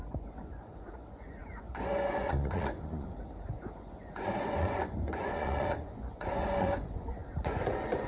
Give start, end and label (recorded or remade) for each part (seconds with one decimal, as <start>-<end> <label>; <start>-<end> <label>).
0.0-8.1 remade